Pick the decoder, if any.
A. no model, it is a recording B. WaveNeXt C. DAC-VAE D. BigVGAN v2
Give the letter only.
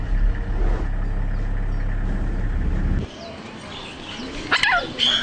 A